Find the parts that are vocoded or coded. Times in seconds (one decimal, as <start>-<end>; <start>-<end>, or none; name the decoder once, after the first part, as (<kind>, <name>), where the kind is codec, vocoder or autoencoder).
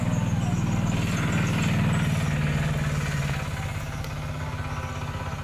none